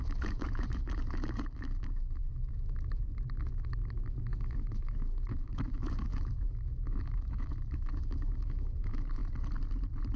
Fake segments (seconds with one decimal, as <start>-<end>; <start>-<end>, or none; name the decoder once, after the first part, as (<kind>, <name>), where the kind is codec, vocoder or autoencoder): 0.0-9.2 (autoencoder, DAC-VAE)